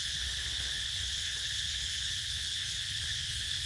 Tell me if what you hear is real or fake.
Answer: fake